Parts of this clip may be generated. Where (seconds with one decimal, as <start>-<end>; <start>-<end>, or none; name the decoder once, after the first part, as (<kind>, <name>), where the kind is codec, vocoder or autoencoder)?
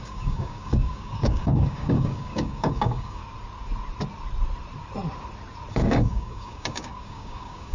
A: 0.0-3.2 (codec, DAC); 5.7-7.7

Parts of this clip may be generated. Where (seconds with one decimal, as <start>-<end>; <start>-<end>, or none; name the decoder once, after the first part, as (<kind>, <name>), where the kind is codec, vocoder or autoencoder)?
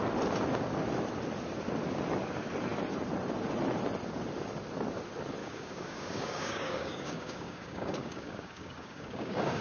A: 5.4-9.6 (codec, DAC)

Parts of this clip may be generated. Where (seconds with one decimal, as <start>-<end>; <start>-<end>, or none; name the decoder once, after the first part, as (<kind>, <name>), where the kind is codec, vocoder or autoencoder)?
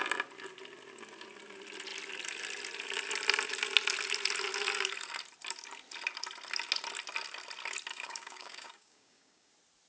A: 7.9-9.5 (codec, DAC)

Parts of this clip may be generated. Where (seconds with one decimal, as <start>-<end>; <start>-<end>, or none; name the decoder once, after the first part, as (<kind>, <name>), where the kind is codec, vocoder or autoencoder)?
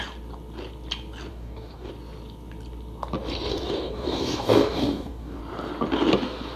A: 1.3-1.9 (codec, DAC); 3.5-5.4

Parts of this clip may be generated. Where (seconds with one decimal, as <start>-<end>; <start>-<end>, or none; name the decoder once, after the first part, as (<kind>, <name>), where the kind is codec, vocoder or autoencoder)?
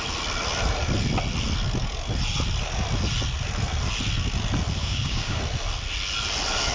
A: 4.8-5.4 (codec, DAC)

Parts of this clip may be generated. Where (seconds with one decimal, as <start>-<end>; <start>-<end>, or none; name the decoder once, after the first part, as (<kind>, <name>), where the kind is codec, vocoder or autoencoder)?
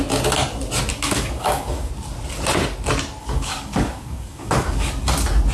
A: 0.9-1.9 (codec, DAC); 3.2-4.9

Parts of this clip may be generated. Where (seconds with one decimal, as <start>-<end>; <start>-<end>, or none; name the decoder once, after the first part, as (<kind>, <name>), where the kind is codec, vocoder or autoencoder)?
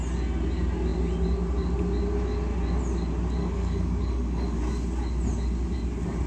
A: 3.4-4.6 (codec, DAC)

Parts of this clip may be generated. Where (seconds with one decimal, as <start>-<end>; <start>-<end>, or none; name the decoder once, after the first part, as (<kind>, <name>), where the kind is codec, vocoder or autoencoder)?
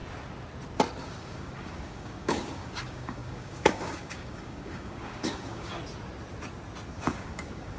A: 1.0-5.7 (codec, DAC); 6.9-7.8